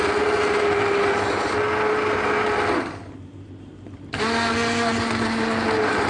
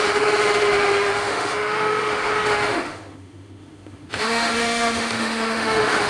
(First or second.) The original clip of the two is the first